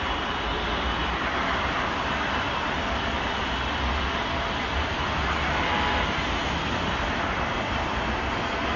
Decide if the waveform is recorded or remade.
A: remade